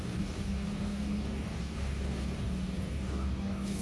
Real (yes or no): no